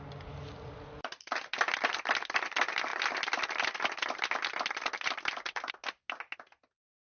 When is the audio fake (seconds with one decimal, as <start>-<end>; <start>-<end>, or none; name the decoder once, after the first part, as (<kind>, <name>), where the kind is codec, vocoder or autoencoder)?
none